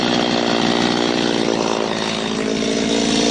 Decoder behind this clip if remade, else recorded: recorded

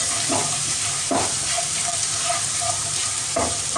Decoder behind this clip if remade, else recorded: remade, vocoder, BigVGAN v2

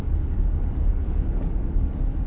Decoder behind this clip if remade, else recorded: remade, codec, DAC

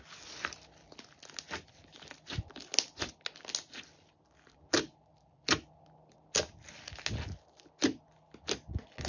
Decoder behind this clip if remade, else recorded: recorded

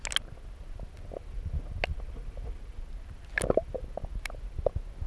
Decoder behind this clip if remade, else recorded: recorded